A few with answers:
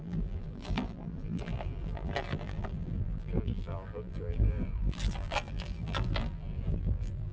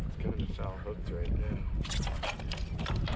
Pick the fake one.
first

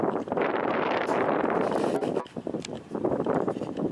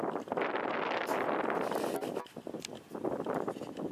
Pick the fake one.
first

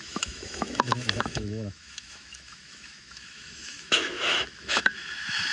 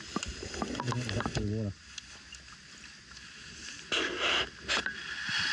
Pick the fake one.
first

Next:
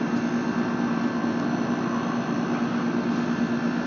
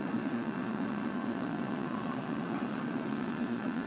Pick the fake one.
second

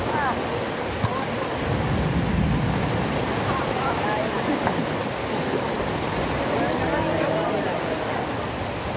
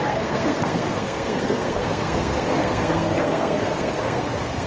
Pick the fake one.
second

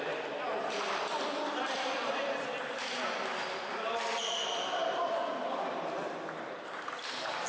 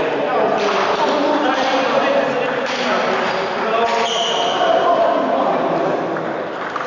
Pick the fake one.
first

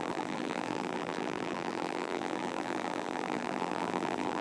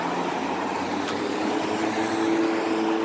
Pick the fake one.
first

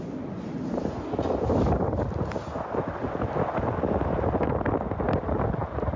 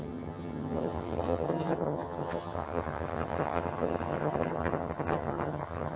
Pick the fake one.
second